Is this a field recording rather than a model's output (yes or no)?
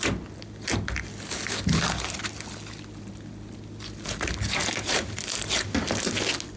yes